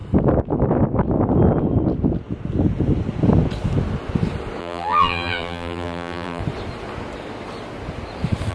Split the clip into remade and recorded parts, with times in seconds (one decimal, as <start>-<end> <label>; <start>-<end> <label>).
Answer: 0.0-4.6 recorded; 4.6-6.4 remade; 6.4-8.5 recorded